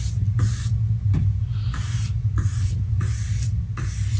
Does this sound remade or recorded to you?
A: recorded